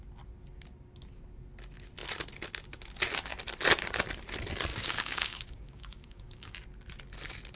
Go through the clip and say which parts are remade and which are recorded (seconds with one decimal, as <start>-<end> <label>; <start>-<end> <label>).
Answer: 0.0-4.7 recorded; 4.7-6.5 remade; 6.5-7.6 recorded